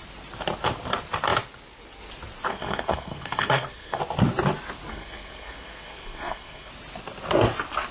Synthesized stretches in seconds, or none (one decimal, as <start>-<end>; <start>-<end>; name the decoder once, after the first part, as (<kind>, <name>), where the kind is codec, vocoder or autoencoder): 2.5-4.0 (codec, SNAC); 4.9-6.7